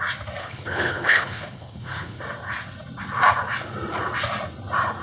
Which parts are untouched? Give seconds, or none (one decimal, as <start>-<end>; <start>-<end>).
0.0-0.4; 2.2-5.0